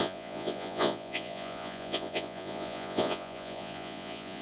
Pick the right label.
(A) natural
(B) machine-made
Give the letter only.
B